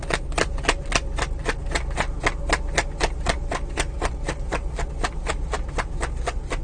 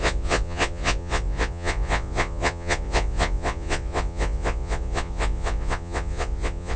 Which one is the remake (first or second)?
second